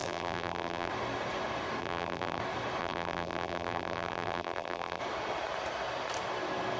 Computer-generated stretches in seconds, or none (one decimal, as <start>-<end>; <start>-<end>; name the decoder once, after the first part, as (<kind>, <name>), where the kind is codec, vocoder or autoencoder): 0.0-0.9 (vocoder, BigVGAN v2); 1.8-2.4; 2.8-5.0